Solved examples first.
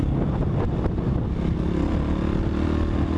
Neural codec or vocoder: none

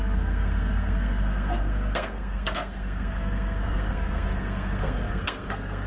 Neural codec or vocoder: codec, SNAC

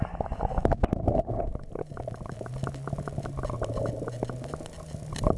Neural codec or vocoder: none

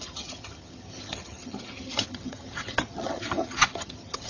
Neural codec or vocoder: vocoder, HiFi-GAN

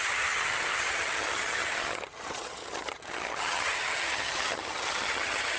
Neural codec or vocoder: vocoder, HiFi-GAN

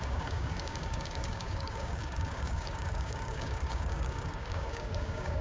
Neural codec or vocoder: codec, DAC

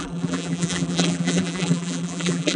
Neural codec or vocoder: vocoder, BigVGAN v2